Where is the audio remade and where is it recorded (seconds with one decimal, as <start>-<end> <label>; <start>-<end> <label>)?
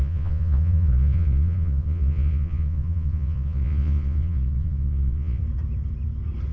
0.0-5.4 remade; 5.4-6.5 recorded